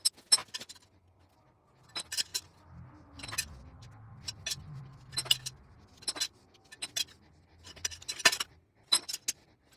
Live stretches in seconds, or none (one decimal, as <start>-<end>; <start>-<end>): 0.0-9.8